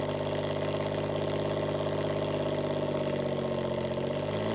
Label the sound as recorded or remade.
recorded